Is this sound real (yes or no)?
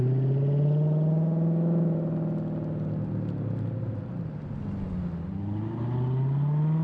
yes